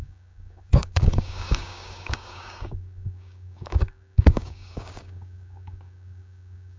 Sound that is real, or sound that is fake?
fake